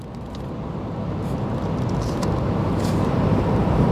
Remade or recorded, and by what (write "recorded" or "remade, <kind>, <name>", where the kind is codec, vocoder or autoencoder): recorded